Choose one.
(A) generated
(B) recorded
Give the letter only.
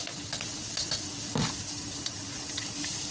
B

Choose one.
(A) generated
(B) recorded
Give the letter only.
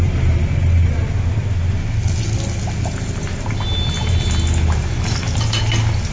B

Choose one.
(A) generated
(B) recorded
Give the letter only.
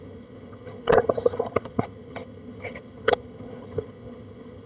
A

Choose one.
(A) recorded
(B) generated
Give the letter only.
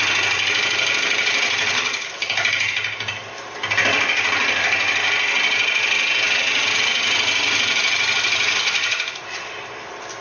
A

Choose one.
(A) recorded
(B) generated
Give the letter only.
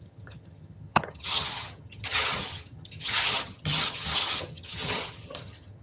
B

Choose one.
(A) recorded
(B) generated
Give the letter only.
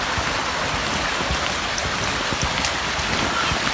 A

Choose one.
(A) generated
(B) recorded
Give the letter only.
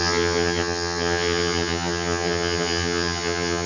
A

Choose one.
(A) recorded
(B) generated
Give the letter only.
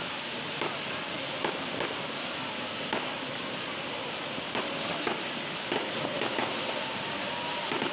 A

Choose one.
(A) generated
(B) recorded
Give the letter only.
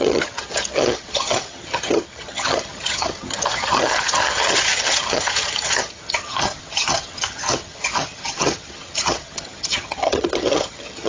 A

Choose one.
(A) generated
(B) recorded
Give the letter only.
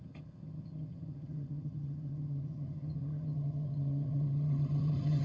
A